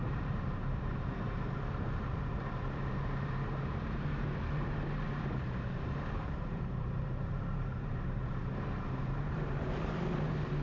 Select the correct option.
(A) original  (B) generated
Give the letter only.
B